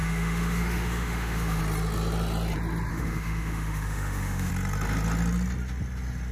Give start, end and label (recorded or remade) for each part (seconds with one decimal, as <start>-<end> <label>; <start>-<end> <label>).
0.0-1.6 remade; 1.6-2.9 recorded; 2.9-4.5 remade; 4.5-6.3 recorded